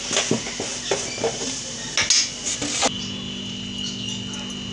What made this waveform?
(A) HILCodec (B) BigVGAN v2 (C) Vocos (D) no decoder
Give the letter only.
D